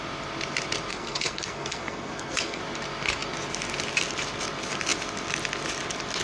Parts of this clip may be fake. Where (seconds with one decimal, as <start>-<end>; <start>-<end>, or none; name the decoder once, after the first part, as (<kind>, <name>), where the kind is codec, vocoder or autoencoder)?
0.9-2.6 (codec, SNAC)